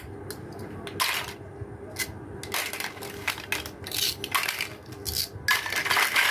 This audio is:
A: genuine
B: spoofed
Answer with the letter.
A